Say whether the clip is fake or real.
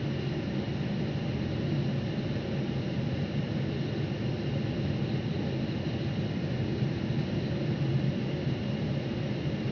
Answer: real